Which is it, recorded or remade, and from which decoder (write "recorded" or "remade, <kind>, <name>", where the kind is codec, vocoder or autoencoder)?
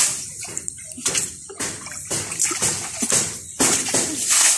recorded